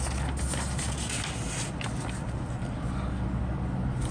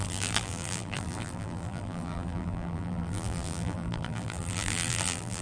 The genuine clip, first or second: first